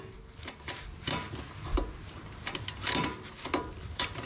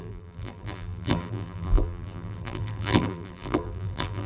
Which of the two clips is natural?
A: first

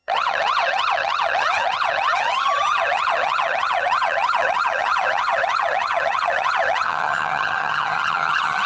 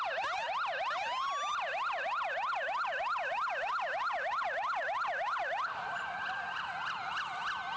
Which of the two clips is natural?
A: second